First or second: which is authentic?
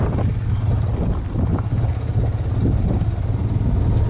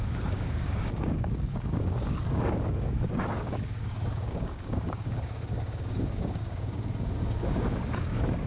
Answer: first